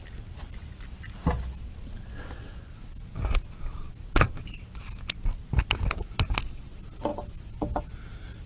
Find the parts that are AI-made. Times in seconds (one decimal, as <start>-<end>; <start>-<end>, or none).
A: 7.1-7.8